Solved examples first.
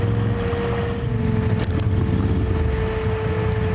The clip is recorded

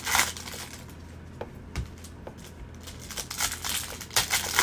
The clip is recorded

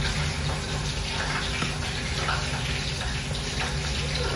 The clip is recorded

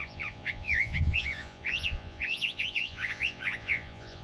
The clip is remade